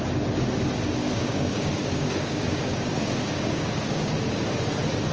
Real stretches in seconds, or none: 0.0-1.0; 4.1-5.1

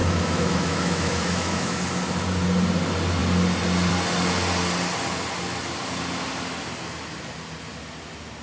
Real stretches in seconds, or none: 1.8-8.4

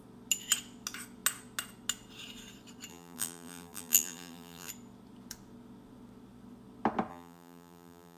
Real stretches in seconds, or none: 0.0-2.9; 4.7-7.1